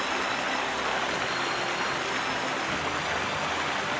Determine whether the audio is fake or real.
real